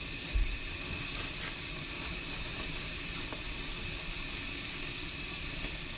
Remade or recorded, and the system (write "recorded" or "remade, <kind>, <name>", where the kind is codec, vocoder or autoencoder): recorded